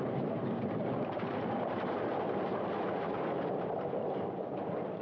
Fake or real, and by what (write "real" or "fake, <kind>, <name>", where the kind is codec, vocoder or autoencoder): fake, vocoder, BigVGAN v2